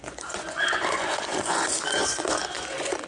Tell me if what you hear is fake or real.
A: fake